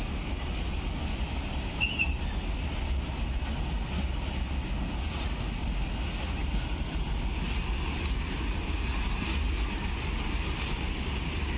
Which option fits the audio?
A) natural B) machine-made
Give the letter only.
A